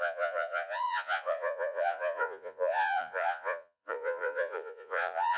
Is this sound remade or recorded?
remade